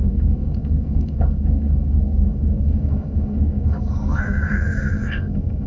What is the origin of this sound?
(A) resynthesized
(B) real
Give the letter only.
A